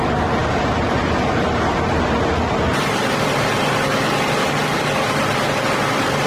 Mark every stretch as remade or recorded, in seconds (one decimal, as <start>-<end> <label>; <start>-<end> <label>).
0.0-6.3 recorded